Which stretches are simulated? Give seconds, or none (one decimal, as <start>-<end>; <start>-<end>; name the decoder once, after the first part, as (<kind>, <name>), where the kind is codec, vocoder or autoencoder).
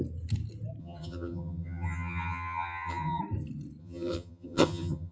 0.8-3.2 (vocoder, HiFi-GAN); 3.8-5.1